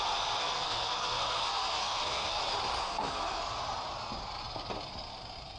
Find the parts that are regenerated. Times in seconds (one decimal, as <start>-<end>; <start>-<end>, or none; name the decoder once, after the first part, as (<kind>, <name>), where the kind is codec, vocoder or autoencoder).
0.4-2.4 (codec, SNAC); 2.8-3.4